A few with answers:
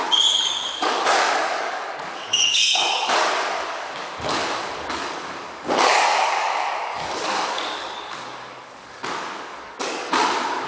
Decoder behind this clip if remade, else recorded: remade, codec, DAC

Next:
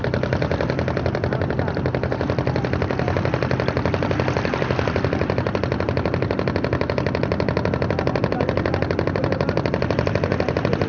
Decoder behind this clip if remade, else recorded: recorded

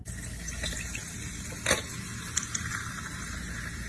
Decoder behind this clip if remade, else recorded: recorded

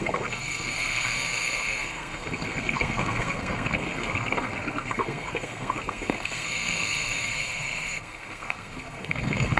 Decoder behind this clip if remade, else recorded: remade, codec, SNAC